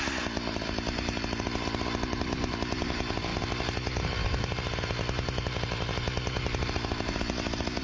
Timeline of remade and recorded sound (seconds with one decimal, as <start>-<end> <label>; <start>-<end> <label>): 0.0-7.8 recorded

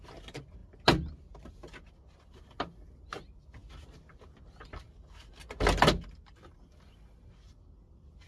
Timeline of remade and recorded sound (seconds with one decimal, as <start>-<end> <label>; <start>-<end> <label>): 0.0-8.3 recorded